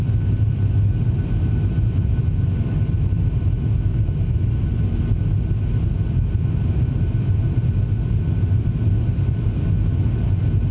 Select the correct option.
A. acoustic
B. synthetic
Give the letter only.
A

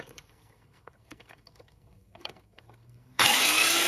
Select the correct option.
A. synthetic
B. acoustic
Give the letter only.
A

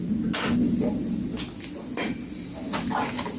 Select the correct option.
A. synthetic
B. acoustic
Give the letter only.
B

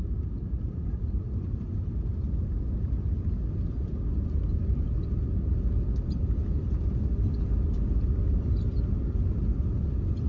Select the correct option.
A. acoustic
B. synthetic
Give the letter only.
B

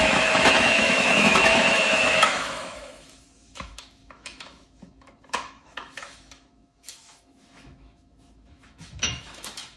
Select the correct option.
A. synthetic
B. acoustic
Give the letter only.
A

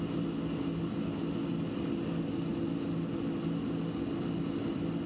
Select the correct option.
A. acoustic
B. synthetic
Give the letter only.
A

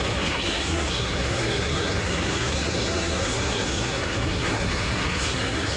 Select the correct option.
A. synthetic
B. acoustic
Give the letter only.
A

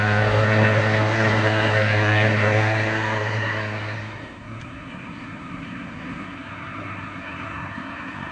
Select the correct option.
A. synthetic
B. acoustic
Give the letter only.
A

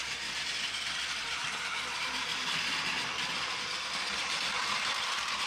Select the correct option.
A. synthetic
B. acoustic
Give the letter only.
A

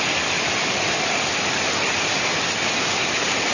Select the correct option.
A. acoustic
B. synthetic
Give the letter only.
A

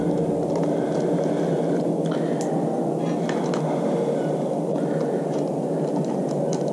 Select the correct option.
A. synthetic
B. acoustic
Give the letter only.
B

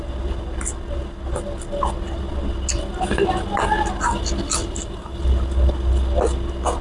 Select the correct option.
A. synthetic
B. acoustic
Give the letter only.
B